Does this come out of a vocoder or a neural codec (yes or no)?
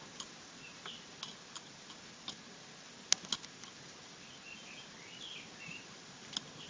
no